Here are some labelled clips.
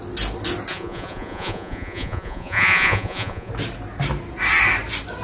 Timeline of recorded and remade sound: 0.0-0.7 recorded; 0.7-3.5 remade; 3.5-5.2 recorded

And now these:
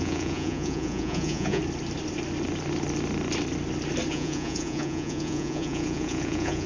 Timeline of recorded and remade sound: 0.0-1.6 remade; 1.6-4.1 recorded; 4.1-6.7 remade

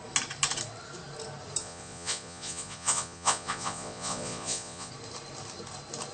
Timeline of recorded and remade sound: 0.0-1.6 recorded; 1.6-4.9 remade; 4.9-6.1 recorded

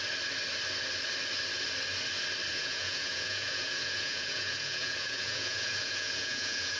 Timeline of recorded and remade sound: 0.0-2.5 recorded; 2.5-6.8 remade

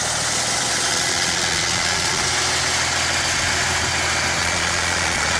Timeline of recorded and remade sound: 0.0-0.9 recorded; 0.9-2.2 remade; 2.2-4.4 recorded; 4.4-5.4 remade

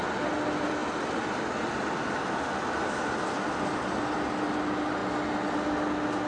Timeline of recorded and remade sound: 0.0-6.3 recorded

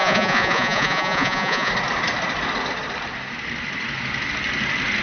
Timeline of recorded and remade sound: 0.0-1.7 remade; 1.7-5.0 recorded

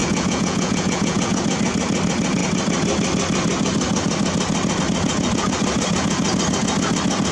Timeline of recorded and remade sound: 0.0-1.4 remade; 1.4-7.3 recorded